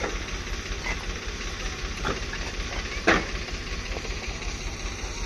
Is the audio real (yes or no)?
yes